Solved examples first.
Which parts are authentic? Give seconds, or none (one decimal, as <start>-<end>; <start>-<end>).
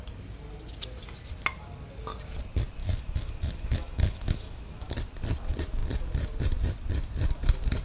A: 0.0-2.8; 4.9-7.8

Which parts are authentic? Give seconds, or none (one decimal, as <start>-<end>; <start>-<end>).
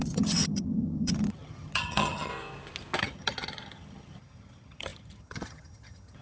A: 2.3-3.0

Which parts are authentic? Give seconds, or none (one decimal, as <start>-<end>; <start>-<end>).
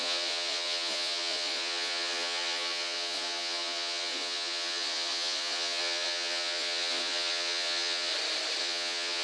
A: 8.1-8.6